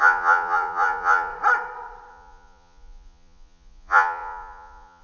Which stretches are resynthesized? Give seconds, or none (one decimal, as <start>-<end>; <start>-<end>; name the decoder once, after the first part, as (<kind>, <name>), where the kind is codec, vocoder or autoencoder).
0.0-1.3 (vocoder, Vocos); 2.1-5.0